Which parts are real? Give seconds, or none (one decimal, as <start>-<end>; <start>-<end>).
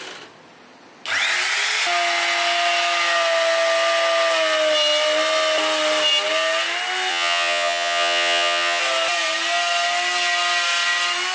0.0-7.1; 8.8-11.3